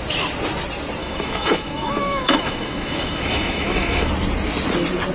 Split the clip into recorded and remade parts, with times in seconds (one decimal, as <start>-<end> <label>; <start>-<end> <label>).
0.0-1.0 recorded; 1.0-4.1 remade; 4.1-5.1 recorded